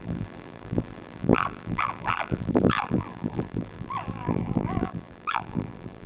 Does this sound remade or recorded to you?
remade